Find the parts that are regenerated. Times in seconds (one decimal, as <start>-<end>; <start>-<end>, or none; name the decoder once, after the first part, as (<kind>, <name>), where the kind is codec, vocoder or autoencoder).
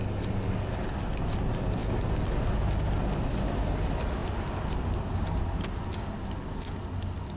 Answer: none